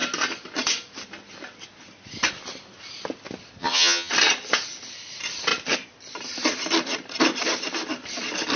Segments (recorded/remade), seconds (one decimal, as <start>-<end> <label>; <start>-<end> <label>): 0.0-3.6 recorded; 3.6-4.1 remade; 4.1-8.6 recorded